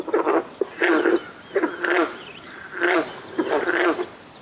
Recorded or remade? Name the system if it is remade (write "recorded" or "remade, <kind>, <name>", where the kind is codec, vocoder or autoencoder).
recorded